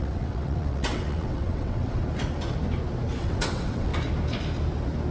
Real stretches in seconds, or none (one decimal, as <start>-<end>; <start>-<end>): 2.0-3.2; 3.9-5.1